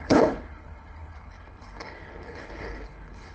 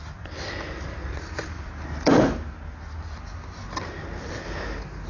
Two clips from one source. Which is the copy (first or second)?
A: first